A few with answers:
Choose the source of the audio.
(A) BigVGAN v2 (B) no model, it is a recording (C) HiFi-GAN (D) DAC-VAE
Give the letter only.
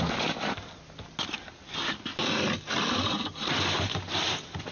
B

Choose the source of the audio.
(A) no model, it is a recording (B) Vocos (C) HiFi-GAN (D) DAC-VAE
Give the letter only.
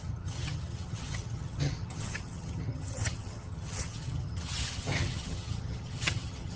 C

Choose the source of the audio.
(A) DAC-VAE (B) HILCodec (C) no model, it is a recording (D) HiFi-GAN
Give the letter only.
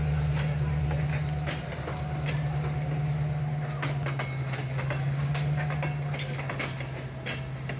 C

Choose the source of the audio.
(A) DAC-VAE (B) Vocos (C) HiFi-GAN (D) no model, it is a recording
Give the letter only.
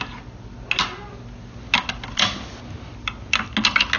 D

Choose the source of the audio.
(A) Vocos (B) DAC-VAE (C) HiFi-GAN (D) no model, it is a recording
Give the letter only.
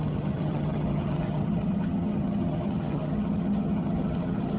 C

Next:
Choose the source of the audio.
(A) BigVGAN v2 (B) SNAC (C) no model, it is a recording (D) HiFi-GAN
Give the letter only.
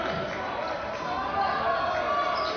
C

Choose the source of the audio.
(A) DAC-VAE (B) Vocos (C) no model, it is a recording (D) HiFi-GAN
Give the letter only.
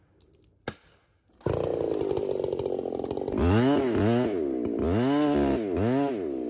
C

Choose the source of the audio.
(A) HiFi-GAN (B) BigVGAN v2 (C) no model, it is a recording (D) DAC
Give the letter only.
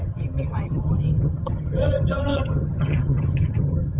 A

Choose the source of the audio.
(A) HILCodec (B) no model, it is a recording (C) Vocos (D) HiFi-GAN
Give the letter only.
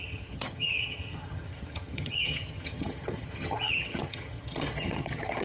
D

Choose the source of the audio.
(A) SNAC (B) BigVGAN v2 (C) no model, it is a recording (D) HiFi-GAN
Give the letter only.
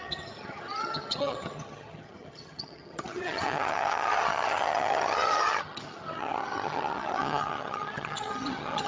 D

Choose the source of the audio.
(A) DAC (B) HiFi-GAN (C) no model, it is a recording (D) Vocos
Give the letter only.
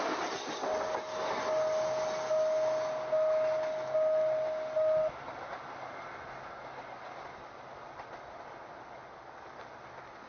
C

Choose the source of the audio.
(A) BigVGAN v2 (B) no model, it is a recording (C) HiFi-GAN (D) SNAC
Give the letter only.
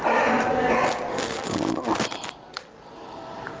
B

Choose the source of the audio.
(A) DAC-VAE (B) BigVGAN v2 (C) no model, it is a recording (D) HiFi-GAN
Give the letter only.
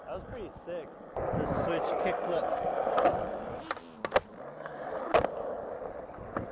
C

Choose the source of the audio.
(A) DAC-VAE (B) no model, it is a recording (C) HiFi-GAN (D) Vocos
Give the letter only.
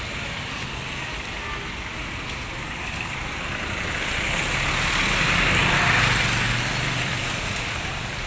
B